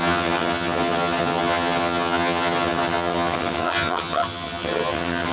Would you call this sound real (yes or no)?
no